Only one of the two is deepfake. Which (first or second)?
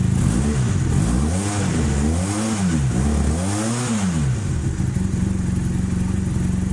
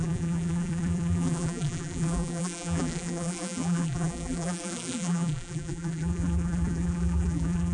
second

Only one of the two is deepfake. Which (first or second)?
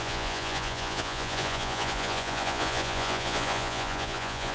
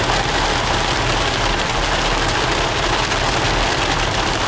first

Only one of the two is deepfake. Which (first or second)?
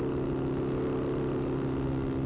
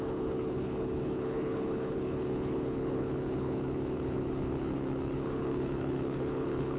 second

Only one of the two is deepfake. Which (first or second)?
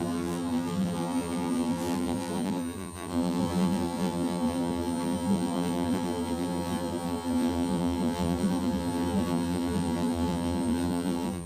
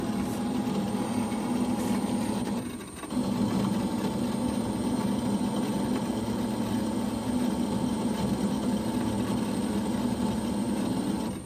first